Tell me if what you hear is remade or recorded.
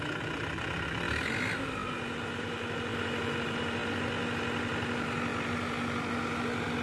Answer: recorded